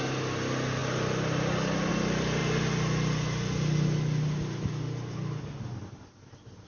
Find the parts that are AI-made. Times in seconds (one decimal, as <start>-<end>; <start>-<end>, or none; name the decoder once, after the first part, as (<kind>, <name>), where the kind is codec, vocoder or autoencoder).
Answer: none